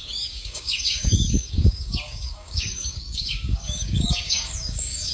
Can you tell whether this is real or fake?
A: fake